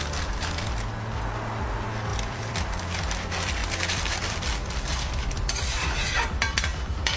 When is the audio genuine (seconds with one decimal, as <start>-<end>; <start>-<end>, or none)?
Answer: 0.0-2.1; 2.8-3.6; 6.6-7.2